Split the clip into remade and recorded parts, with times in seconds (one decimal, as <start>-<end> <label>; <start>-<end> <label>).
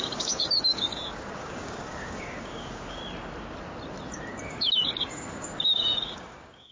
0.0-3.0 remade; 3.0-4.5 recorded; 4.5-6.7 remade